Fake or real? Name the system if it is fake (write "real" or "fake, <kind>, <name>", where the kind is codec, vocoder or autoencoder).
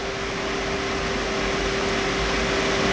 real